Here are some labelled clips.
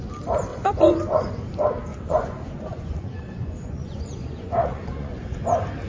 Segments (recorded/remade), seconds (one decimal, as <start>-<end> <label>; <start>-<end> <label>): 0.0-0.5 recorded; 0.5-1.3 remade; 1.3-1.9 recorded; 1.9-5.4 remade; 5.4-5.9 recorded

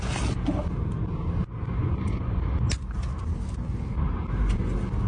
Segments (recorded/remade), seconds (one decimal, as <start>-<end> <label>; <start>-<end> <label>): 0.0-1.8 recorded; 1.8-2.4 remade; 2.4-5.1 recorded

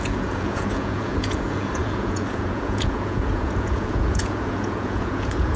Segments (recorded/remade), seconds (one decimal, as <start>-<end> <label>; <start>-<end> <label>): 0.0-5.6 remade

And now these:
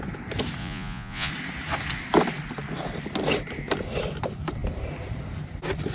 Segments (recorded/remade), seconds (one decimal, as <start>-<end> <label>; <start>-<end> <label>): 0.0-0.6 recorded; 0.6-1.3 remade; 1.3-5.9 recorded

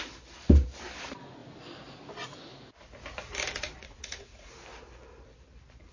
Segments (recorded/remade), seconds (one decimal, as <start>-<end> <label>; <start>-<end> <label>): 0.0-3.8 recorded; 3.8-4.5 remade; 4.5-5.9 recorded